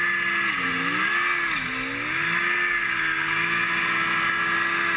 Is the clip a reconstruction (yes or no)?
no